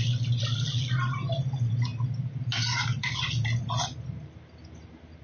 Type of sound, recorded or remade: recorded